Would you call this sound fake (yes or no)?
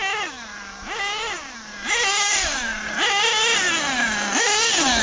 no